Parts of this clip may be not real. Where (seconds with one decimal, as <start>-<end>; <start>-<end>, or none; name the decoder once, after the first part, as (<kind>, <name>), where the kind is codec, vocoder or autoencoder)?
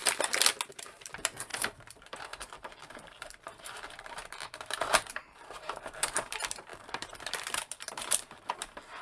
0.7-9.0 (vocoder, BigVGAN v2)